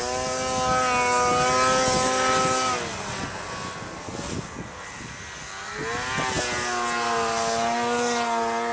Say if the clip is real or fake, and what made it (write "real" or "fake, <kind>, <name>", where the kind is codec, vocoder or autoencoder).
real